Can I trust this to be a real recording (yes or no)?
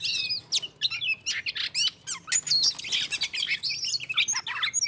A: yes